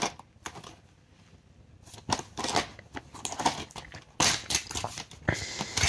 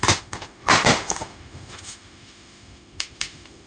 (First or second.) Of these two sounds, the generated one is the second